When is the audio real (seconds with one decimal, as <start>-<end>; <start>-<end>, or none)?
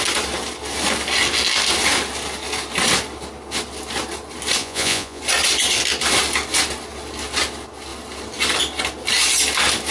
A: 0.0-4.6; 5.2-9.9